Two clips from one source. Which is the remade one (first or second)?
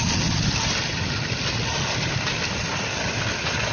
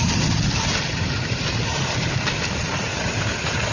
second